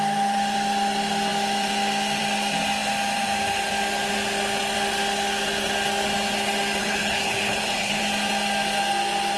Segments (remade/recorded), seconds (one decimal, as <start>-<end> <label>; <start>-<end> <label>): 0.0-6.8 recorded; 6.8-8.0 remade; 8.0-9.4 recorded